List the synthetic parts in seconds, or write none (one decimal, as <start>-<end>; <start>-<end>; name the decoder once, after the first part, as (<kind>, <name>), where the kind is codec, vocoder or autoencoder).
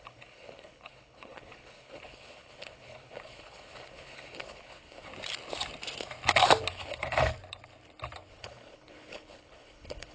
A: 0.0-5.1 (codec, HILCodec); 6.7-7.3; 8.3-10.1